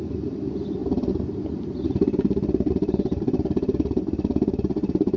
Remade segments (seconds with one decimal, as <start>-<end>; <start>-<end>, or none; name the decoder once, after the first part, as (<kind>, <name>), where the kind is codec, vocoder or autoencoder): none